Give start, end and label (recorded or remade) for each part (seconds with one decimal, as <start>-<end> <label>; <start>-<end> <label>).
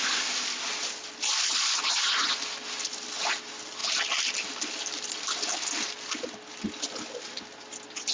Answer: 0.0-8.1 recorded